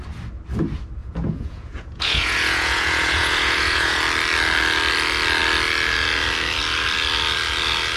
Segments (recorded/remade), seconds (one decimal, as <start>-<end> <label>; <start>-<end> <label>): 0.0-1.0 recorded; 1.0-4.0 remade; 4.0-8.0 recorded